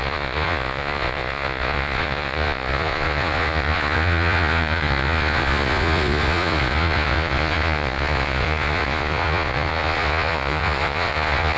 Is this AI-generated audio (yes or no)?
yes